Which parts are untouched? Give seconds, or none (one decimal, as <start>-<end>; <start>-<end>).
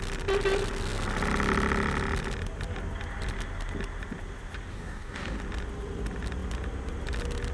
0.0-4.7; 5.4-7.5